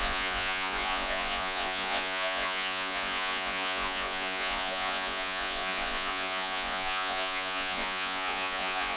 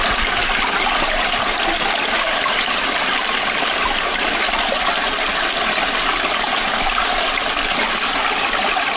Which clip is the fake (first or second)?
first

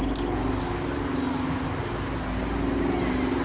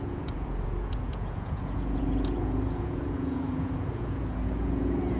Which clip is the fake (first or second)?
second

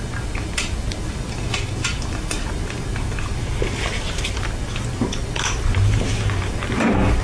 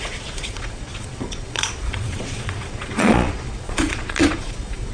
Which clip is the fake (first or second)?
second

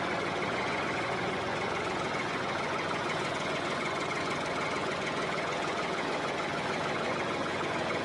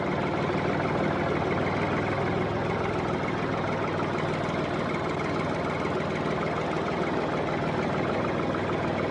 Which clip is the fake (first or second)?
first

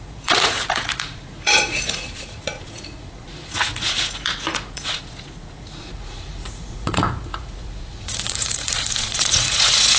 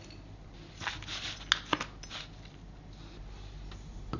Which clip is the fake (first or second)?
first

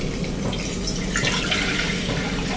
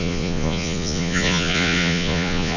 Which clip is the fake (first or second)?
second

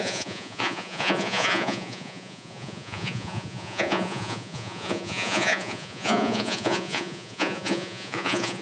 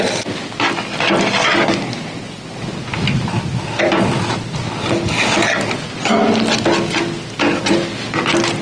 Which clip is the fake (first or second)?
first